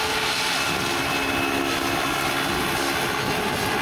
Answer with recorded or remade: recorded